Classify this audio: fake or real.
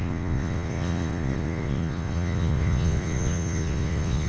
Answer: fake